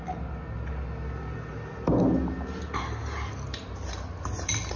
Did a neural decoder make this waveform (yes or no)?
no